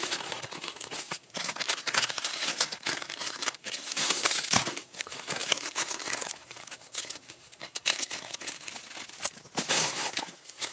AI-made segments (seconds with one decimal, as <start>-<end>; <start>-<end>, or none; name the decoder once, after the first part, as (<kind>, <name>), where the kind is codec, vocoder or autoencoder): 0.0-8.7 (codec, SNAC); 9.7-10.7